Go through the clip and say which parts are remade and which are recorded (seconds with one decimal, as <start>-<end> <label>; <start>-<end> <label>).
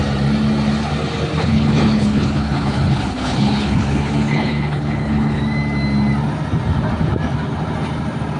0.0-1.4 recorded; 1.4-5.4 remade; 5.4-8.4 recorded